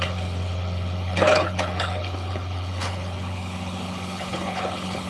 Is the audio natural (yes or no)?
no